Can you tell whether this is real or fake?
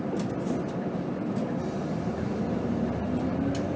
real